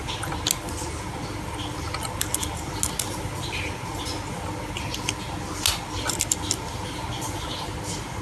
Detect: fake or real real